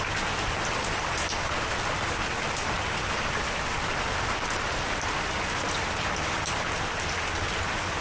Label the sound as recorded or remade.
recorded